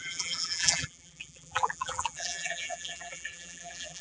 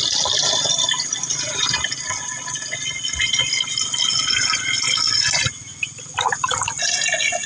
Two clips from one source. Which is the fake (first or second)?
first